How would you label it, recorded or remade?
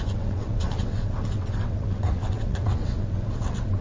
remade